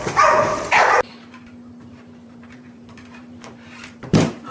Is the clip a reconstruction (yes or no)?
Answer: yes